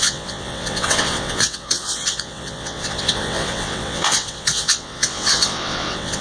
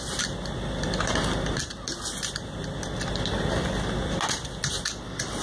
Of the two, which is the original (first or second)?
second